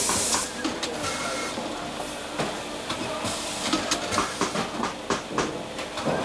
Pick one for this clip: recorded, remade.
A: recorded